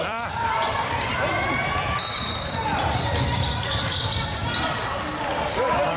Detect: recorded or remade remade